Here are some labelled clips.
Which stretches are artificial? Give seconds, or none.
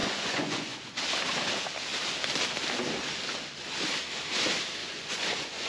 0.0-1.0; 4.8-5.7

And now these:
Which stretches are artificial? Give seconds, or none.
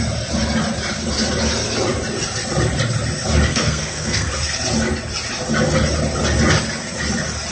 3.5-4.3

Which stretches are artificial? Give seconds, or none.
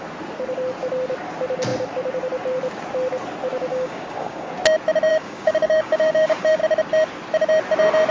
3.7-4.5; 5.1-6.6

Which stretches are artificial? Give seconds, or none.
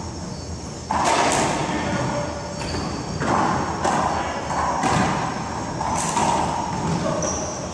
none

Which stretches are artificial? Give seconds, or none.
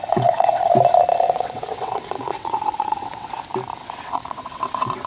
0.0-0.7; 1.1-3.4; 3.8-5.1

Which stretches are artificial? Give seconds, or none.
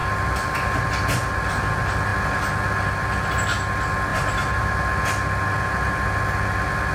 4.1-4.7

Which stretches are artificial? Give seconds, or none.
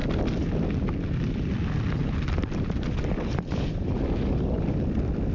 none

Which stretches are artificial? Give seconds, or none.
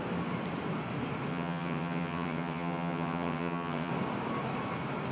1.3-3.9